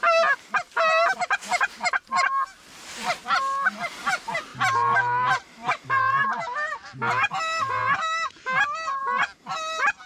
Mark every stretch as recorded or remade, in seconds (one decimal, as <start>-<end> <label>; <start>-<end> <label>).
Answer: 0.0-4.5 recorded; 4.5-6.7 remade; 6.7-10.1 recorded